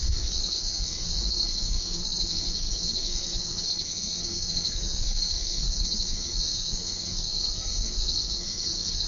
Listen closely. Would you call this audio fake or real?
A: fake